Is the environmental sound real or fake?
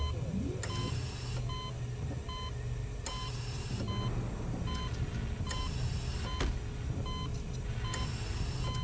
real